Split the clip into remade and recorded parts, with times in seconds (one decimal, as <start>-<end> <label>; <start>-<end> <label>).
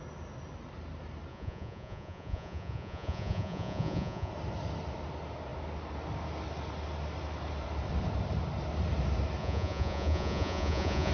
0.0-1.3 recorded; 1.3-4.3 remade; 4.3-9.4 recorded; 9.4-11.1 remade